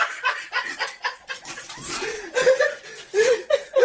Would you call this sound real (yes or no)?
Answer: no